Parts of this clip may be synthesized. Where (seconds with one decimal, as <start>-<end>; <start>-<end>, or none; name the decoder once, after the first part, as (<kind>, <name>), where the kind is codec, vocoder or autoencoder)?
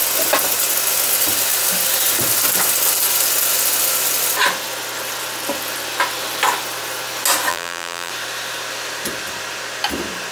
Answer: 7.5-8.1 (vocoder, BigVGAN v2)